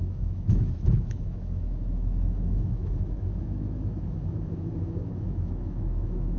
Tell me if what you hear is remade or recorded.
remade